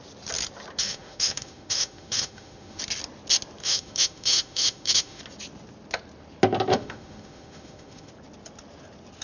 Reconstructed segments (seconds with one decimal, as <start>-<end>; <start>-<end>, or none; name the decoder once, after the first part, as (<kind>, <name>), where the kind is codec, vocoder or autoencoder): 0.8-2.8 (autoencoder, DAC-VAE); 3.6-5.2; 6.7-8.1